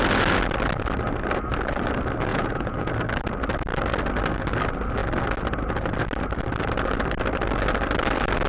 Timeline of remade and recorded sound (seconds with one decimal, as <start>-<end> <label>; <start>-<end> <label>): 0.0-2.3 recorded; 2.3-2.9 remade; 2.9-8.5 recorded